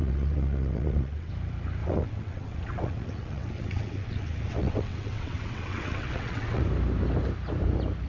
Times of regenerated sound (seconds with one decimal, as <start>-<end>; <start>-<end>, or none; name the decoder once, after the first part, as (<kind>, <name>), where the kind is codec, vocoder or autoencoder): 0.0-1.3 (vocoder, WaveNeXt); 1.8-6.6